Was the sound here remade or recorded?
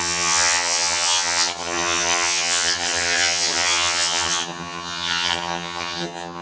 remade